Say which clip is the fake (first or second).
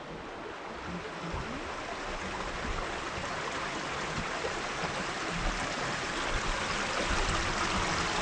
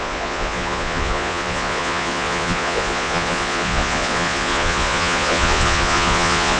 second